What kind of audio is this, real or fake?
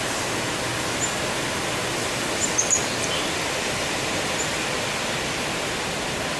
real